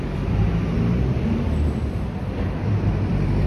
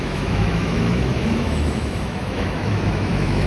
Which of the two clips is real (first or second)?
first